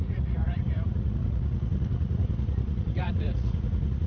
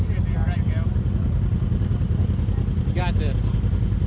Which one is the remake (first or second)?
first